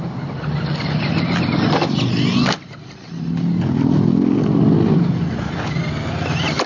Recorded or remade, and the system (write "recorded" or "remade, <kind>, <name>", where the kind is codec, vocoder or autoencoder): recorded